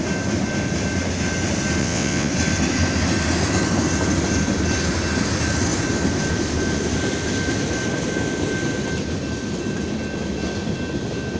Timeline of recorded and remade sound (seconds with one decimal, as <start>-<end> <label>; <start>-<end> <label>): 0.0-1.8 recorded; 1.8-2.3 remade; 2.3-11.4 recorded